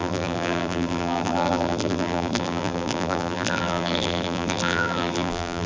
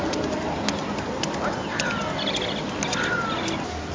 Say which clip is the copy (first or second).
first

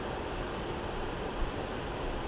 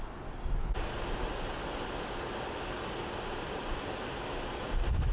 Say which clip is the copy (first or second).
first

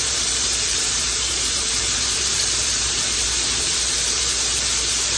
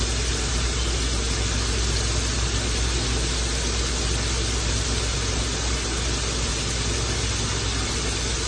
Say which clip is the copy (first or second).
first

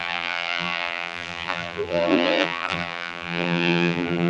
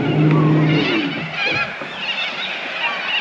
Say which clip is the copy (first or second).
first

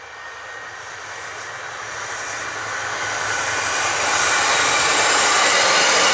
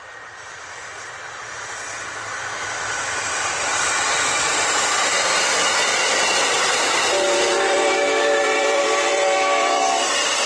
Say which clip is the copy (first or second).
second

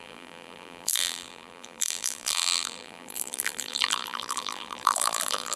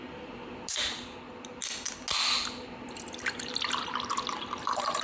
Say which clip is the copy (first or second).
first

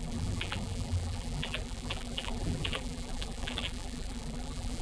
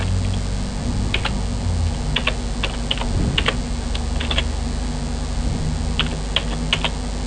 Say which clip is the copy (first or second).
first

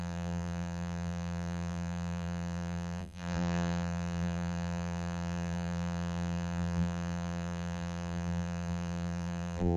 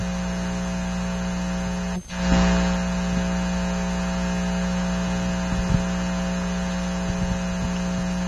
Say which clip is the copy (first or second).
first